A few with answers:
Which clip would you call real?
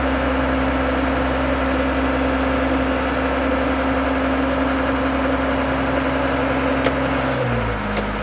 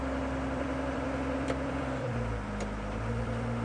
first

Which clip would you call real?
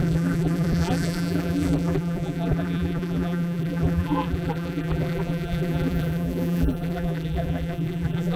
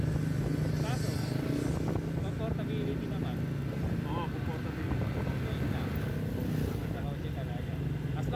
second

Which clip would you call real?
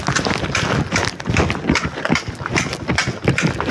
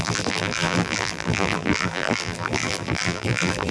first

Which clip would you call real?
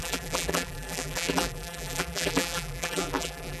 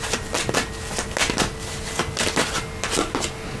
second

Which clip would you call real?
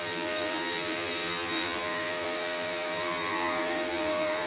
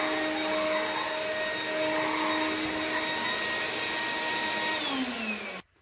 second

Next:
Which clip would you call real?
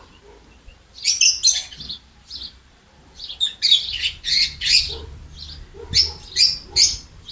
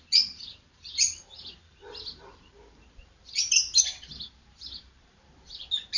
first